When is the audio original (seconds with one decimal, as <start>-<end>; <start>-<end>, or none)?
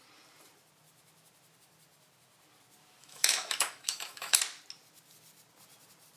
0.0-3.0; 4.4-6.2